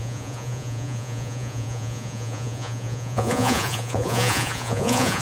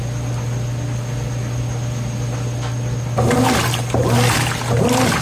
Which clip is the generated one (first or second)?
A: first